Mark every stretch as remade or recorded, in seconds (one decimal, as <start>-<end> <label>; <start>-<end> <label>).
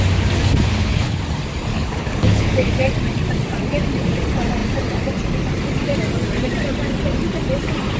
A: 0.0-0.7 recorded; 0.7-1.2 remade; 1.2-1.7 recorded; 1.7-2.7 remade; 2.7-8.0 recorded